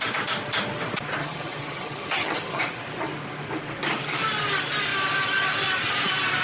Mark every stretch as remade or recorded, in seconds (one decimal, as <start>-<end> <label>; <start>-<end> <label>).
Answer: 0.0-1.2 recorded; 1.2-2.6 remade; 2.6-6.4 recorded